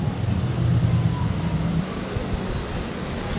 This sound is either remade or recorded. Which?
recorded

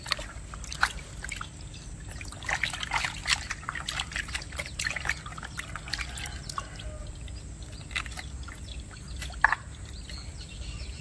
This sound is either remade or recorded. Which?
recorded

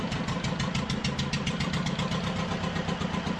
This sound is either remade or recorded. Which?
recorded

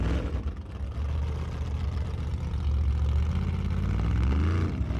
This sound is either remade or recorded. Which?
recorded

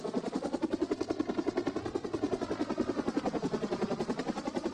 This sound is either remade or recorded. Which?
recorded